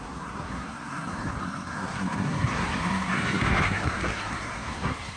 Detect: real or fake fake